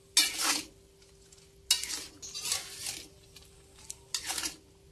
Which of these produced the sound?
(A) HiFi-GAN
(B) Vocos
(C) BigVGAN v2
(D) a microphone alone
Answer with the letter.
D